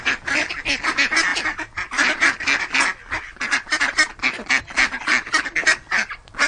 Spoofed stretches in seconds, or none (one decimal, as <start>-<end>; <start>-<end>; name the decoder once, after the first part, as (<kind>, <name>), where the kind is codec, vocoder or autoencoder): none